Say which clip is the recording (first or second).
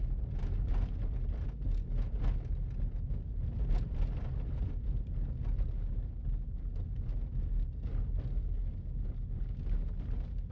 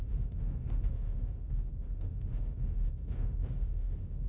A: first